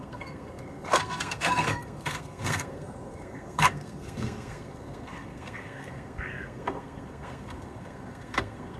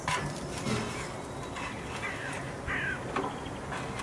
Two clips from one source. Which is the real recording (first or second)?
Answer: second